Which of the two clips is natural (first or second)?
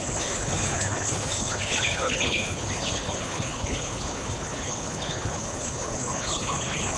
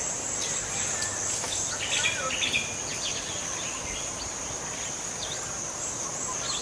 second